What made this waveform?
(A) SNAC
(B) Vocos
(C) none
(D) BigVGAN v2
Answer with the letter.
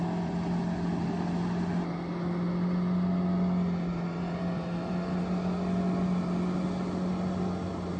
C